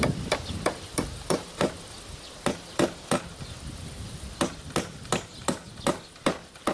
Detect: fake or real real